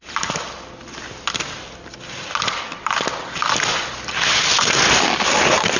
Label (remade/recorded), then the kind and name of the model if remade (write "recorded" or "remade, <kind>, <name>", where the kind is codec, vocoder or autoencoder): recorded